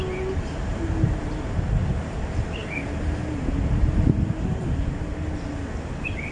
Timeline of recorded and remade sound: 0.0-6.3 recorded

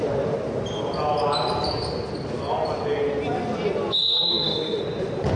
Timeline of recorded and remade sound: 0.0-4.0 recorded; 4.0-4.8 remade; 4.8-5.4 recorded

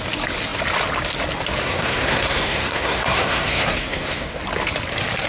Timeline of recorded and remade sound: 0.0-1.6 recorded; 1.6-4.4 remade; 4.4-5.3 recorded